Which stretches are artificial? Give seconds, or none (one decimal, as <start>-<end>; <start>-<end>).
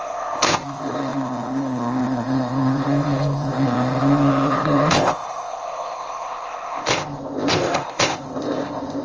0.0-9.0